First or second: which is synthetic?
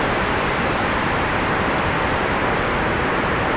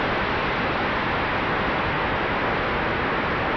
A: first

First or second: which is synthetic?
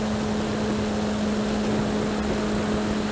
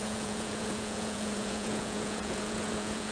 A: second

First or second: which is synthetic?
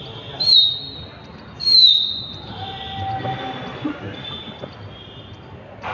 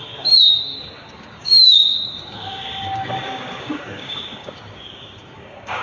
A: second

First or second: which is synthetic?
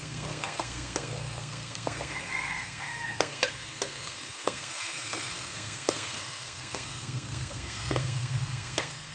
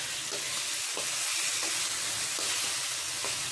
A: first